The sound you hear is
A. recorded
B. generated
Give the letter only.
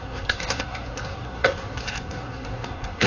B